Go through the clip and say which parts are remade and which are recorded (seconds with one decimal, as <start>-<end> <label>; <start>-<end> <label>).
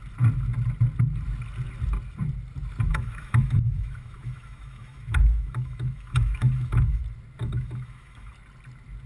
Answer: 0.0-2.9 recorded; 2.9-7.0 remade; 7.0-7.4 recorded; 7.4-8.3 remade; 8.3-9.1 recorded